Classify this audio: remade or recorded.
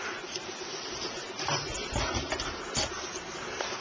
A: recorded